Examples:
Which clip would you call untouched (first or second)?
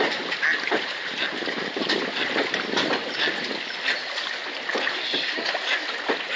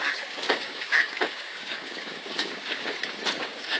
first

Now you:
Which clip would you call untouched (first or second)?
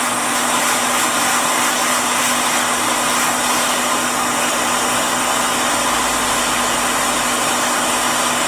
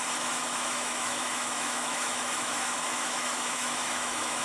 first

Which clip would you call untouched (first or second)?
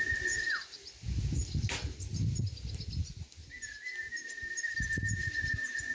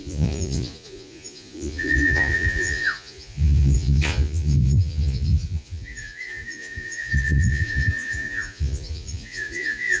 first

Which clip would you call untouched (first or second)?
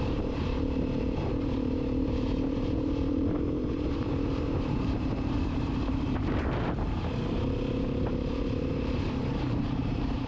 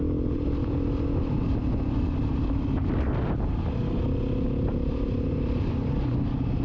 second